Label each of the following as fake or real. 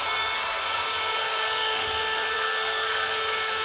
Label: fake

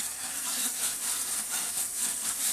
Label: fake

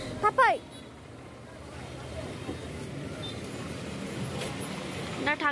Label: real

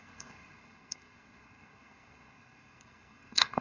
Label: fake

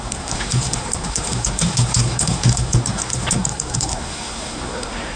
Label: fake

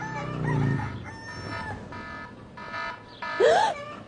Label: real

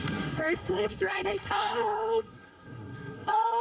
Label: fake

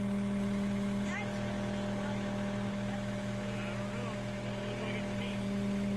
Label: real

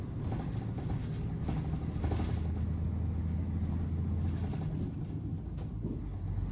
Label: real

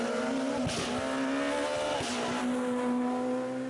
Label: real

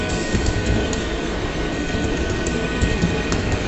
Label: fake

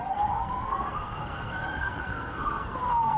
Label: fake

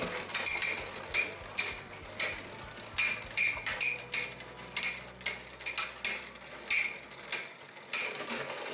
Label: real